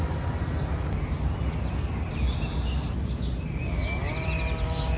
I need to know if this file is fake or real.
real